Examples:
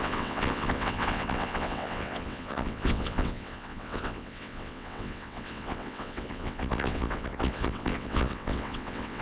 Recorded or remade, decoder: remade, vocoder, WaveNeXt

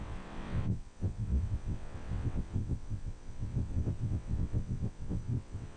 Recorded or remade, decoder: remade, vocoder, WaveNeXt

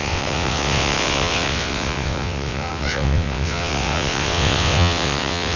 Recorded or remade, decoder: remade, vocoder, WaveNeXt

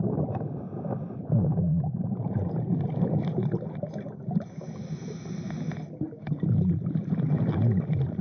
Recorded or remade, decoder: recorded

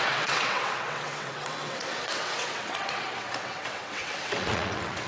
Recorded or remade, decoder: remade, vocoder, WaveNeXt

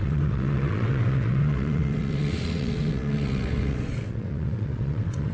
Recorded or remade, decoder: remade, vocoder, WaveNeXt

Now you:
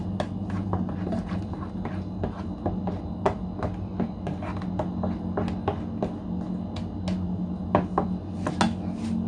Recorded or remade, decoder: recorded